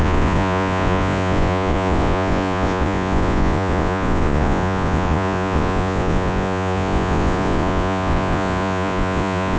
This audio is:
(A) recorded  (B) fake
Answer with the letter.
B